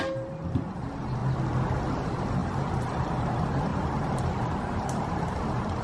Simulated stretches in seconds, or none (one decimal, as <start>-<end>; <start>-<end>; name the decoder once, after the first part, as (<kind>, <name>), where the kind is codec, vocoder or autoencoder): 0.0-1.2 (vocoder, BigVGAN v2); 1.9-5.8